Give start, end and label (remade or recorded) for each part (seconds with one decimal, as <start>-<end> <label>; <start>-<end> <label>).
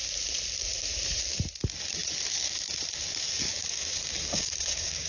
0.0-3.5 recorded; 3.5-5.1 remade